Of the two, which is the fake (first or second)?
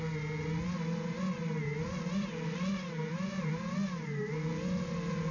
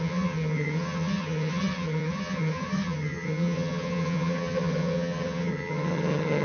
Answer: second